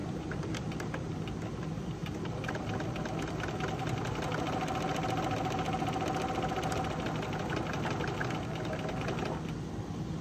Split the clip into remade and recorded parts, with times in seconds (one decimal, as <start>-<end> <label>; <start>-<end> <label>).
0.0-1.1 remade; 1.1-2.0 recorded; 2.0-2.6 remade; 2.6-10.2 recorded